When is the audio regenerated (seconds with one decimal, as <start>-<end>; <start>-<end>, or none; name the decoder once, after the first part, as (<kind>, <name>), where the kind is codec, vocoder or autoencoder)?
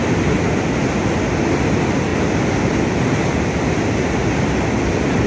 none